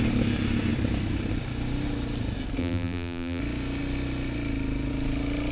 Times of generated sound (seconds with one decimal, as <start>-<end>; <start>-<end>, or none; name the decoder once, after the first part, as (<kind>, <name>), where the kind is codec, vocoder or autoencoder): 2.6-3.4 (vocoder, BigVGAN v2)